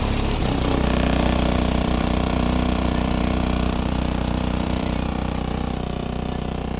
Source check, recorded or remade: remade